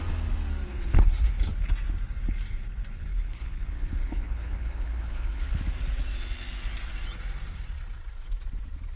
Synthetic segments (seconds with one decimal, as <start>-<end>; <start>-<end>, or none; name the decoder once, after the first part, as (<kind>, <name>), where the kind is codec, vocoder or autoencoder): 0.7-1.5 (codec, HILCodec); 3.1-5.4

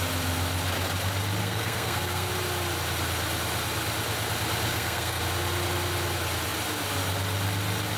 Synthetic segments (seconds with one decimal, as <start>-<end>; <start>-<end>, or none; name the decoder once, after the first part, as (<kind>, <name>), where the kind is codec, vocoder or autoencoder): 1.4-2.3 (codec, SNAC); 4.7-5.2

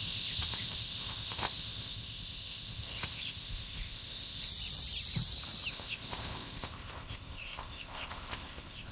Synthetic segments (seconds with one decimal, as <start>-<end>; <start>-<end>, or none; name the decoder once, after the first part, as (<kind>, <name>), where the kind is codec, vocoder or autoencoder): 0.0-4.5 (codec, ZipCodec); 5.7-8.9

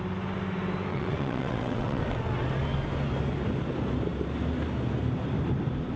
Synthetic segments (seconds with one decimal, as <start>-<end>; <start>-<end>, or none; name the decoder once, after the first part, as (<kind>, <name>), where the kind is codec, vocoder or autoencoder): 0.9-2.0 (vocoder, WaveNeXt)